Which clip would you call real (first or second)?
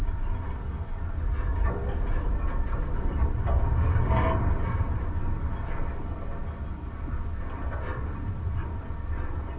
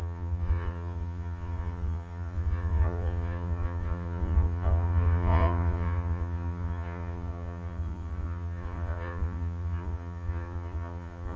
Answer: first